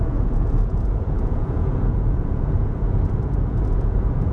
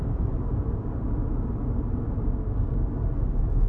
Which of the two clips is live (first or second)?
second